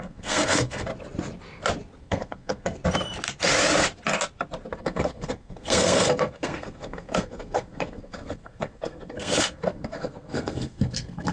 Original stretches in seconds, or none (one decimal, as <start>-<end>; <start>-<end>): 0.9-2.0; 2.8-4.8